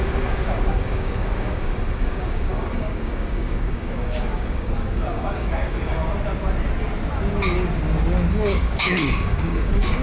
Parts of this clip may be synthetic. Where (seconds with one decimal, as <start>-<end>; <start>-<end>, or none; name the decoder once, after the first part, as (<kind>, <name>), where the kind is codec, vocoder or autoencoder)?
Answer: 0.0-6.0 (codec, DAC); 8.3-10.0